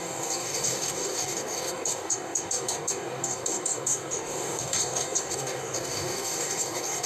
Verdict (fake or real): fake